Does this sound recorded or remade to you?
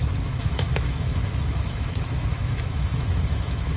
remade